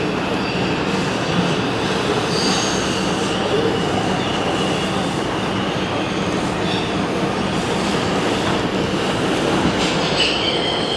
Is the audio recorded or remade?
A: recorded